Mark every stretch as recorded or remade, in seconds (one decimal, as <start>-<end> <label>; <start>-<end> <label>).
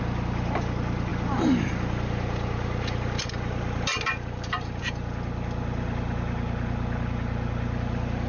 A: 0.0-1.1 recorded; 1.1-4.8 remade; 4.8-8.3 recorded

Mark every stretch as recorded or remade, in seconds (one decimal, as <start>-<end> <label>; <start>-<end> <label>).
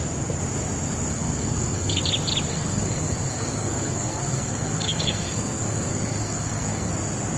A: 0.0-1.1 recorded; 1.1-2.0 remade; 2.0-2.5 recorded; 2.5-6.9 remade; 6.9-7.4 recorded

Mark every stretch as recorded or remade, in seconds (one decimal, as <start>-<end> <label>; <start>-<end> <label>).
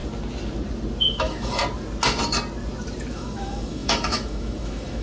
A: 0.0-1.1 recorded; 1.1-1.6 remade; 1.6-3.1 recorded; 3.1-5.0 remade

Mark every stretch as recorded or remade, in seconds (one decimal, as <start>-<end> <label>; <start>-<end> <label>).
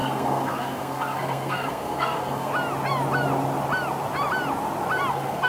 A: 0.0-2.5 remade; 2.5-5.1 recorded; 5.1-5.5 remade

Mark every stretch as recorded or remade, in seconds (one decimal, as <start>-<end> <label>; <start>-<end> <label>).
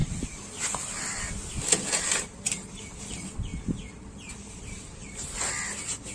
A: 0.0-6.1 recorded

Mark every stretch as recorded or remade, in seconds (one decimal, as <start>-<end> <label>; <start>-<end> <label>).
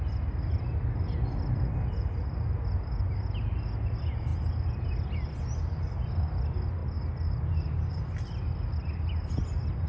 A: 0.0-9.9 recorded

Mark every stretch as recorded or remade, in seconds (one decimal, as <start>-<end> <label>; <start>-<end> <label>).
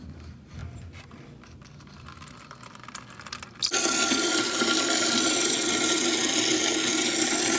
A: 0.0-7.6 recorded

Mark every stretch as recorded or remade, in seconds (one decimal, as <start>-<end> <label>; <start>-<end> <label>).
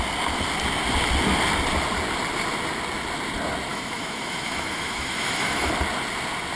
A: 0.0-3.7 recorded; 3.7-5.7 remade; 5.7-6.6 recorded